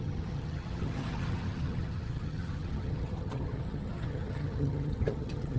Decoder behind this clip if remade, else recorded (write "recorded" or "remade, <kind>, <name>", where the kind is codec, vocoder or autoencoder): remade, vocoder, HiFi-GAN